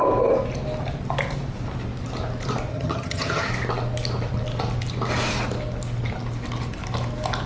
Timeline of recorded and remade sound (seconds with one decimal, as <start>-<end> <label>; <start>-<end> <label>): 0.0-2.7 recorded; 2.7-3.5 remade; 3.5-7.5 recorded